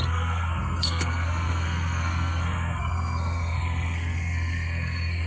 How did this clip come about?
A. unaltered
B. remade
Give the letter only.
B